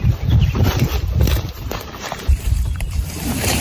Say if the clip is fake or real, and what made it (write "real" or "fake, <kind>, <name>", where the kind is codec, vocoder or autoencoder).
fake, vocoder, BigVGAN v2